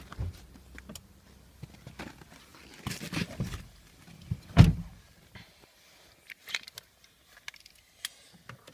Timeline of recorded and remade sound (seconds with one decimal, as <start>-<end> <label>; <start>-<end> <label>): 0.0-8.7 recorded